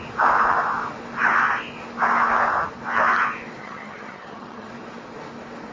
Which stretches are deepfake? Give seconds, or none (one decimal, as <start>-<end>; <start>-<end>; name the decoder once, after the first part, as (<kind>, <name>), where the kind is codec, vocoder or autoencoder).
3.6-4.7 (vocoder, HiFi-GAN)